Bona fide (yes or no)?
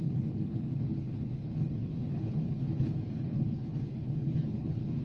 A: no